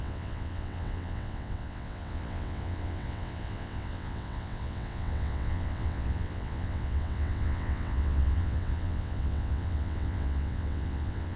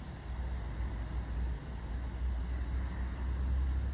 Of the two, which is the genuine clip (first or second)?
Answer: second